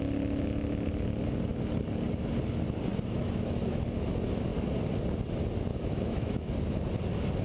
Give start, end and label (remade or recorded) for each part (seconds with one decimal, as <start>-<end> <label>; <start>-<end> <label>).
0.0-2.9 recorded; 2.9-3.7 remade; 3.7-5.7 recorded; 5.7-6.5 remade; 6.5-7.4 recorded